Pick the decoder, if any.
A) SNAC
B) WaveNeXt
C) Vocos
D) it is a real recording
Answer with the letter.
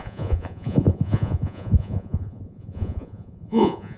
C